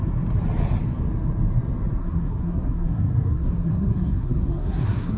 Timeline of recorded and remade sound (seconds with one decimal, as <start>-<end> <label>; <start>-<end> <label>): 0.0-2.0 recorded; 2.0-5.2 remade